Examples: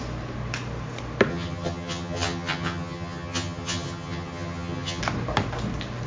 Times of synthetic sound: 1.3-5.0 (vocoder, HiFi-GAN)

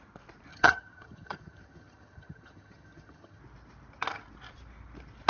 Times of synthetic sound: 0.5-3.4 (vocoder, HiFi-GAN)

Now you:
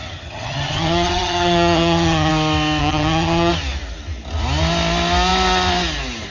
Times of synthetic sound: 0.0-2.3 (vocoder, HiFi-GAN); 2.8-3.5

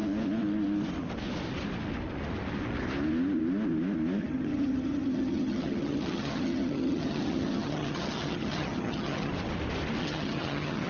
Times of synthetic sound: 4.2-9.3 (vocoder, HiFi-GAN); 10.0-10.9

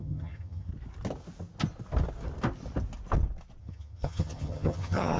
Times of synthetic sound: 0.0-0.7 (vocoder, HiFi-GAN); 3.6-5.2

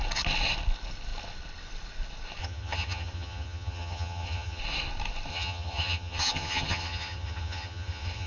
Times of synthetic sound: 2.4-4.6 (vocoder, HiFi-GAN); 5.3-8.3